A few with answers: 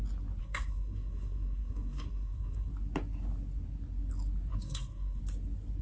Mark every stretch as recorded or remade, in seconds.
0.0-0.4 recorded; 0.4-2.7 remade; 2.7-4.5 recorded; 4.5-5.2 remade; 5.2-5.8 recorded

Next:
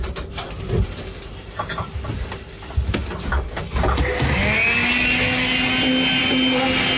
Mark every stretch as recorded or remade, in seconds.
0.0-7.0 recorded